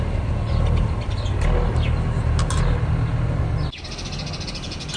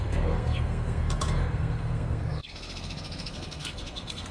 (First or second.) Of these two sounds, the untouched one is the first